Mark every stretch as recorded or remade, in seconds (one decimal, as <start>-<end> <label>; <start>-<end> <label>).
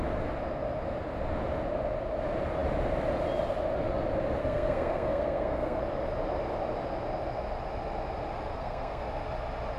0.0-4.4 recorded; 4.4-5.8 remade; 5.8-8.5 recorded; 8.5-9.0 remade; 9.0-9.8 recorded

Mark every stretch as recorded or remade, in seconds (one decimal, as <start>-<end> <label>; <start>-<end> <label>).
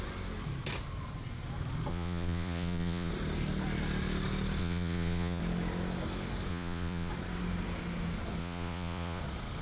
0.0-1.9 recorded; 1.9-3.1 remade; 3.1-4.6 recorded; 4.6-5.4 remade; 5.4-6.5 recorded; 6.5-7.1 remade; 7.1-8.4 recorded; 8.4-9.2 remade; 9.2-9.6 recorded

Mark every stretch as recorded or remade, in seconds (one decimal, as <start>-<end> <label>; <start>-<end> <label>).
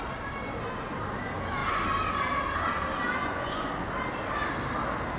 0.0-3.2 recorded; 3.2-3.7 remade; 3.7-5.2 recorded